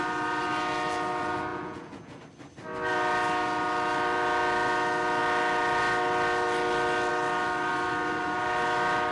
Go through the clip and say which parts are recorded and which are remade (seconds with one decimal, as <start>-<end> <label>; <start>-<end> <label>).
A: 0.0-1.5 recorded; 1.5-2.2 remade; 2.2-9.1 recorded